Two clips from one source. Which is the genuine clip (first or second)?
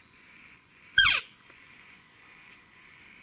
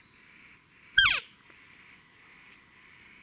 second